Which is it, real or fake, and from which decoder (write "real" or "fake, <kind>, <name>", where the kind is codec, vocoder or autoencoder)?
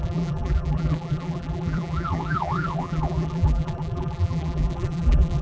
fake, vocoder, BigVGAN v2